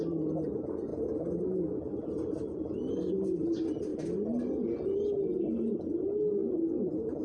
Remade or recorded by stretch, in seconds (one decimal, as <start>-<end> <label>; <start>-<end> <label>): 0.0-7.2 recorded